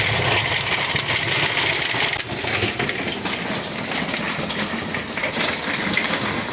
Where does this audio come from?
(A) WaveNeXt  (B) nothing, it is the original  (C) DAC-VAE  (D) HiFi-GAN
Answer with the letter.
B